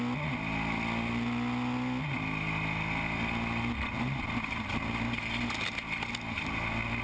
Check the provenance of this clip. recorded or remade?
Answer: recorded